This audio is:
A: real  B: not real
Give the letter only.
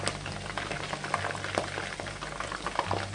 A